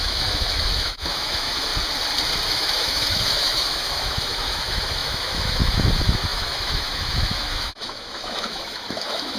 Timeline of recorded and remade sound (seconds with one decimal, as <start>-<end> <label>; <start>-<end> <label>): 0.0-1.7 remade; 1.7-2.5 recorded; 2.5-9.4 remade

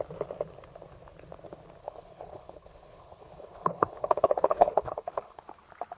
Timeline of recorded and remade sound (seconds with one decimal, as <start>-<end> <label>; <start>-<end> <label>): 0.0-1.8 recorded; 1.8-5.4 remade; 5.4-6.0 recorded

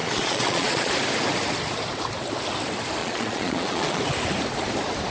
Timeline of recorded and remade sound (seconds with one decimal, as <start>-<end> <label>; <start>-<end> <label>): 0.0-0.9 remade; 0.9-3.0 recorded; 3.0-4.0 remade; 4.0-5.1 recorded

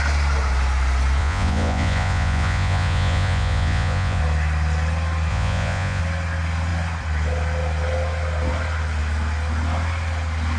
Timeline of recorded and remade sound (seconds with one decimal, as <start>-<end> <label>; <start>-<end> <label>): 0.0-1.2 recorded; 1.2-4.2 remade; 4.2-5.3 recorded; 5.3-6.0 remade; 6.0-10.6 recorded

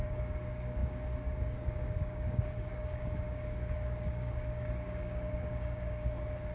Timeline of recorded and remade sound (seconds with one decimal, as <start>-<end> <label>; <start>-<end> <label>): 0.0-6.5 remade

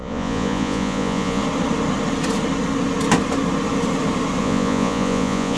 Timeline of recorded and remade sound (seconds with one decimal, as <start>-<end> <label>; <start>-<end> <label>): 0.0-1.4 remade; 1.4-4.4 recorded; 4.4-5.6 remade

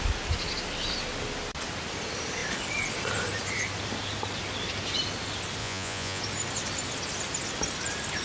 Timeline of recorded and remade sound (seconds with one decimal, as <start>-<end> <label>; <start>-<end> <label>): 0.0-5.6 recorded; 5.6-6.2 remade; 6.2-8.2 recorded

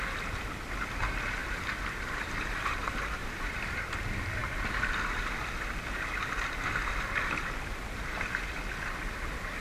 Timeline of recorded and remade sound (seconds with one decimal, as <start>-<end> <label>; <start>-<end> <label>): 0.0-1.4 recorded; 1.4-3.7 remade; 3.7-9.6 recorded